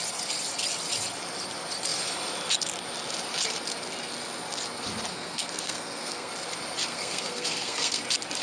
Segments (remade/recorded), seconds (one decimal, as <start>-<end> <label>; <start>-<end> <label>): 0.0-5.1 recorded; 5.1-6.3 remade; 6.3-6.9 recorded; 6.9-8.0 remade; 8.0-8.4 recorded